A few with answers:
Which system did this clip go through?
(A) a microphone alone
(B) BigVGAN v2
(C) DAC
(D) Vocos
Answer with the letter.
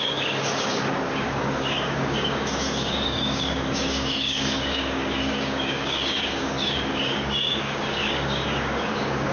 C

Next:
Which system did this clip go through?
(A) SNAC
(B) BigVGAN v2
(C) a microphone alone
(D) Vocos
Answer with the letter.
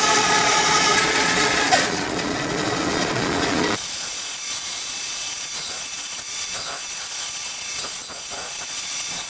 D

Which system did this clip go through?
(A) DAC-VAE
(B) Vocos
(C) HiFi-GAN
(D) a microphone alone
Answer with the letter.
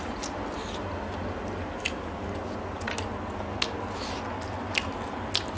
D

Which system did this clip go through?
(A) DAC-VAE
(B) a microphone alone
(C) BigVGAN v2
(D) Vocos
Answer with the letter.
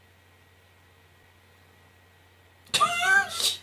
B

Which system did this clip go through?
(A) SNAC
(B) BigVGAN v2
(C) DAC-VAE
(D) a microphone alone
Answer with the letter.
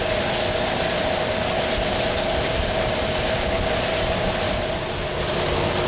D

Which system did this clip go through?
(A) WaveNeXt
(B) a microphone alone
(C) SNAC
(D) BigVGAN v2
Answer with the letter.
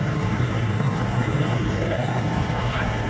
C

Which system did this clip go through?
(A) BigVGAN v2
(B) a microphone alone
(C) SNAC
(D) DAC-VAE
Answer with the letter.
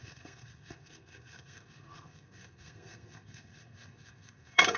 C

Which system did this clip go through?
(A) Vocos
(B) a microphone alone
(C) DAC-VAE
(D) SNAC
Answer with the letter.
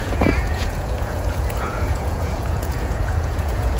A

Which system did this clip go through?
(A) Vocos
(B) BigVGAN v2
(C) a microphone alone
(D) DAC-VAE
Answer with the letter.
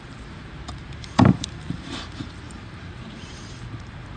B